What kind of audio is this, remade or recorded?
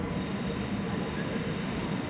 recorded